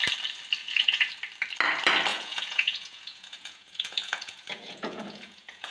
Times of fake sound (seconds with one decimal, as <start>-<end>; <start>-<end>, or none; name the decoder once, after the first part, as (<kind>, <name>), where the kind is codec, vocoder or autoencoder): 0.6-1.1 (vocoder, Vocos); 2.1-5.7